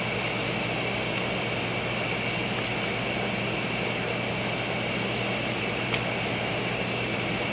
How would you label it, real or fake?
real